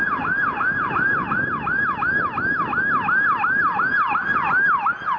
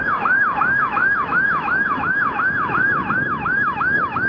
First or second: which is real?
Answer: first